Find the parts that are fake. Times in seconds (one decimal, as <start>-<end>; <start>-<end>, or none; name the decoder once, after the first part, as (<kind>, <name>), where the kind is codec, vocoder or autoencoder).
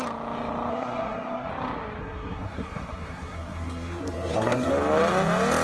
0.7-1.5 (codec, SNAC); 2.0-4.7